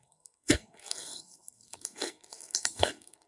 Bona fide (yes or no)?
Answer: no